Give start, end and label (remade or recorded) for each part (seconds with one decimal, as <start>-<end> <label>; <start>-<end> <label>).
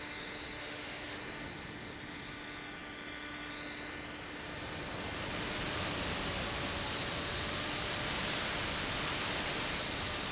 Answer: 0.0-0.6 recorded; 0.6-1.2 remade; 1.2-10.3 recorded